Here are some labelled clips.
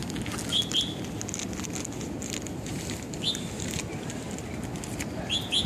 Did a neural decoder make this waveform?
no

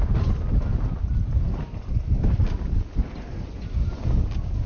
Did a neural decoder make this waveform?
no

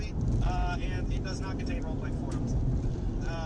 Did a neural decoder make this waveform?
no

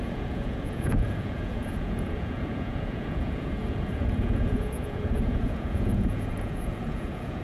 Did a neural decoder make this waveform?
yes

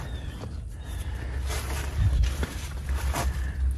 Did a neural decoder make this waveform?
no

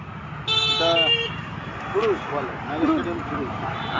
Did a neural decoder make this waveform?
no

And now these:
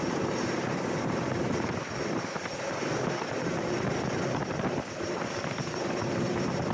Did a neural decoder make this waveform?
yes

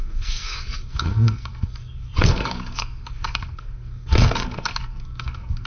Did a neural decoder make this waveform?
yes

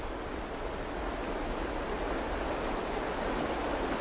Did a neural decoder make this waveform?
no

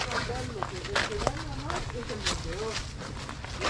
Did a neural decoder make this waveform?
no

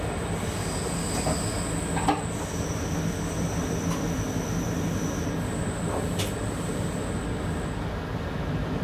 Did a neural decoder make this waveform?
no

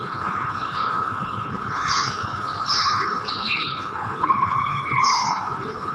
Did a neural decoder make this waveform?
yes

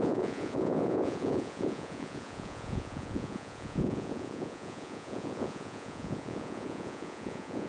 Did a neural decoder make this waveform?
yes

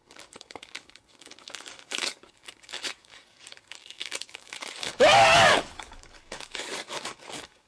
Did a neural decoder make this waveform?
yes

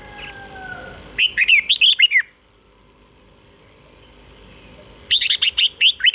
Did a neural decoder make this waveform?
no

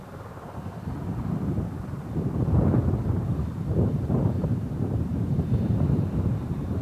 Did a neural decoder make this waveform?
yes